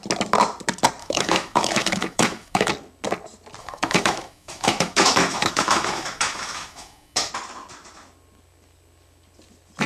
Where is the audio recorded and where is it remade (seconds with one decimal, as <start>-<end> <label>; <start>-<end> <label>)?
0.0-1.0 recorded; 1.0-2.7 remade; 2.7-3.6 recorded; 3.6-7.3 remade; 7.3-9.9 recorded